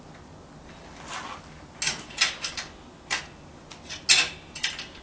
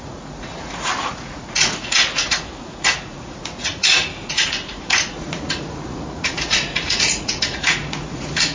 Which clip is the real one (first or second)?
first